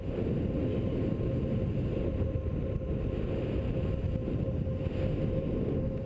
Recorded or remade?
recorded